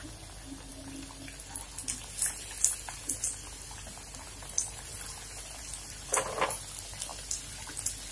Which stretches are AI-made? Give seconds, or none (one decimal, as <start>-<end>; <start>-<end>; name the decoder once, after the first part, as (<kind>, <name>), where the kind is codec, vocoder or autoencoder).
none